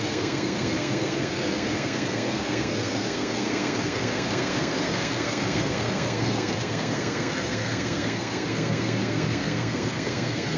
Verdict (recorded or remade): remade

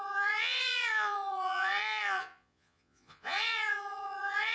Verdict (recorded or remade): remade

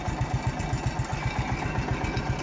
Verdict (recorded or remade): recorded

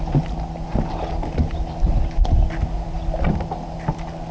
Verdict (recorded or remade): recorded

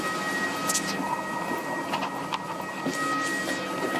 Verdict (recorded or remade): recorded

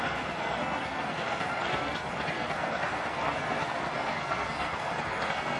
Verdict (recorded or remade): remade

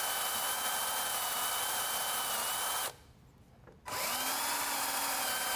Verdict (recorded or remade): recorded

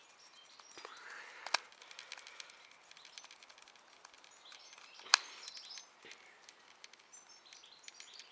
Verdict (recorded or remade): recorded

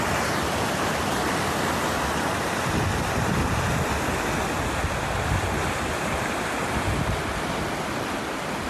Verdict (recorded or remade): recorded